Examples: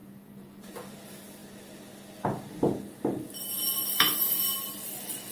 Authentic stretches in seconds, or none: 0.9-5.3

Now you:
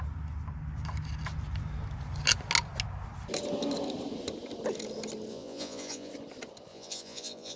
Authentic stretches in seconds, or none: 0.0-5.3; 6.1-6.7

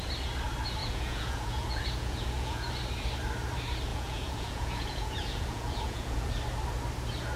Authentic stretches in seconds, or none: 0.0-0.8; 2.7-3.9; 6.3-7.4

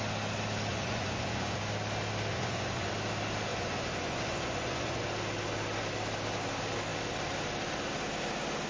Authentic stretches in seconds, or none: 0.0-0.7; 1.6-2.3; 2.9-3.5; 5.0-8.7

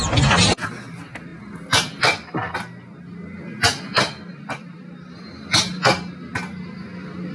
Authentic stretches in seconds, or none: 0.0-7.3

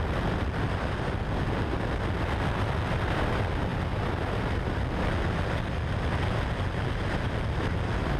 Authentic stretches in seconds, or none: 0.0-8.2

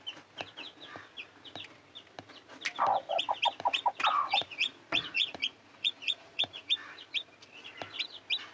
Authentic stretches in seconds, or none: 0.0-4.1; 6.7-8.5